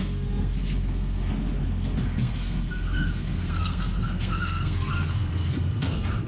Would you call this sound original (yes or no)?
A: no